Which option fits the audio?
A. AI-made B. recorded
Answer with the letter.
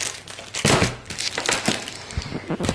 B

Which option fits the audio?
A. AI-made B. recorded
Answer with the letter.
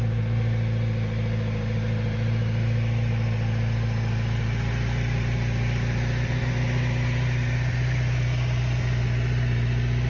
B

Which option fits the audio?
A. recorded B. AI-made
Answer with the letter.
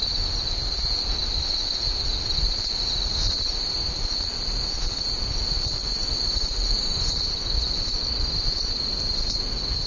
A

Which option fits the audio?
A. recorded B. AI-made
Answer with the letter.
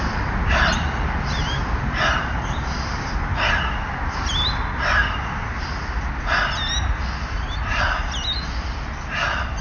A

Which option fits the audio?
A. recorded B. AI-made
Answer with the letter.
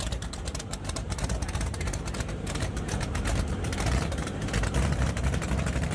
B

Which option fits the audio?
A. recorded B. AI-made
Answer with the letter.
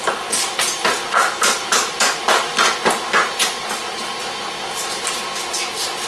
A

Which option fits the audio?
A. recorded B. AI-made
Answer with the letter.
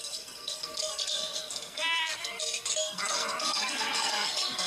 B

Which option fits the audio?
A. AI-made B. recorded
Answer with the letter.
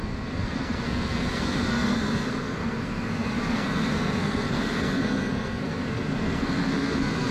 A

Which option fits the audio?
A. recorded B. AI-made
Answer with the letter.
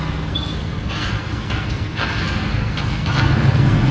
B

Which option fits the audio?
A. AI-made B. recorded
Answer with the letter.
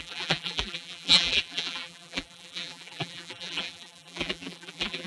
A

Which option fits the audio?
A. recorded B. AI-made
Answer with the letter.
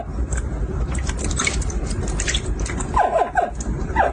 A